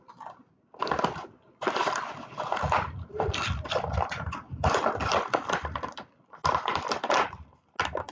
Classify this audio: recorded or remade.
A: recorded